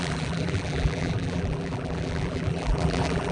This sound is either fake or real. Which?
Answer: fake